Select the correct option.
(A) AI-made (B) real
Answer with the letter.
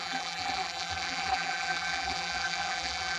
A